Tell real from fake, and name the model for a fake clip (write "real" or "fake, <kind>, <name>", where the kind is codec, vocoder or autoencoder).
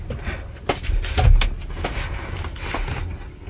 real